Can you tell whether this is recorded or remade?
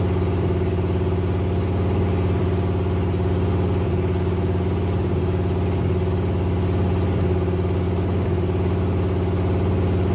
recorded